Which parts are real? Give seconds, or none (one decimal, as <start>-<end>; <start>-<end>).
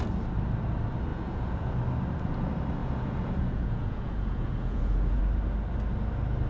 0.0-1.1; 1.7-2.8; 5.2-6.5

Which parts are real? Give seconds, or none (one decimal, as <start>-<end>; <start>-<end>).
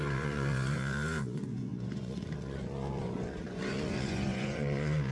none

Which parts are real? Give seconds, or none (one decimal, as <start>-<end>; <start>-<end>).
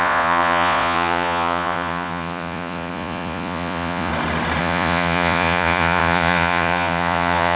4.1-4.6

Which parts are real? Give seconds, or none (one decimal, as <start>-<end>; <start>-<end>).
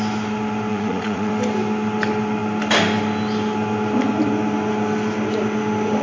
0.0-0.7; 1.3-6.0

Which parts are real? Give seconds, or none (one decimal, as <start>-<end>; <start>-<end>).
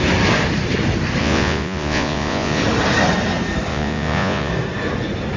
0.0-1.2; 2.6-3.7; 4.5-5.4